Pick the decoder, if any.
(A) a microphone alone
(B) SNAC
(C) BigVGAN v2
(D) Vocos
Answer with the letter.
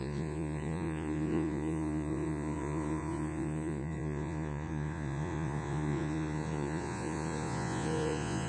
D